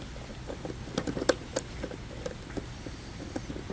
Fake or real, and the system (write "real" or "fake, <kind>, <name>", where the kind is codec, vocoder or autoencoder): real